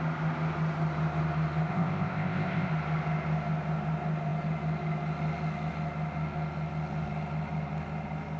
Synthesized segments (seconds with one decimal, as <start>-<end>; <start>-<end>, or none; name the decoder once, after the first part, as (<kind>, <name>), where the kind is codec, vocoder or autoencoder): 1.7-2.7 (codec, ZipCodec)